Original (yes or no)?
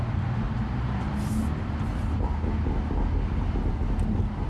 yes